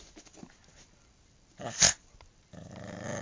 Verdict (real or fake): real